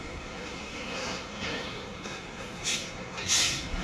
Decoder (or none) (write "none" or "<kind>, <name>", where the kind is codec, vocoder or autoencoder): codec, SNAC